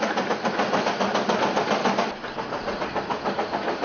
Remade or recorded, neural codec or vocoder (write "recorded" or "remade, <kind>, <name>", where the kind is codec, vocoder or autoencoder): recorded